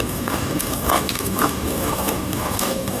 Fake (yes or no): yes